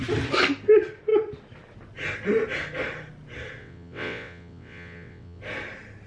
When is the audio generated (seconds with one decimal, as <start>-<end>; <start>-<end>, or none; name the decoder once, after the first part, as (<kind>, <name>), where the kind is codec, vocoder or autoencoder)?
3.6-5.4 (vocoder, WaveNeXt)